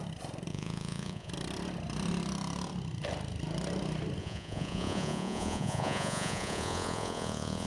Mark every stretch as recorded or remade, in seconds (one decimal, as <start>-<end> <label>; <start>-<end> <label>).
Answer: 0.0-0.5 recorded; 0.5-1.3 remade; 1.3-4.2 recorded; 4.2-7.7 remade